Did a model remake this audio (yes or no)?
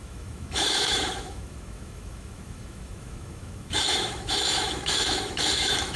yes